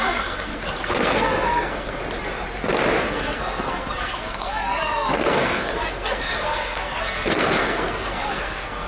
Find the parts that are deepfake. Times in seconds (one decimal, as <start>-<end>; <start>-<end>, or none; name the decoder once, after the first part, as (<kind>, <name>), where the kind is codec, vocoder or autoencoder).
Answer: 0.0-2.0 (codec, SNAC); 3.0-8.9